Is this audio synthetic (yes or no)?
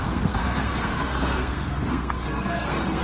yes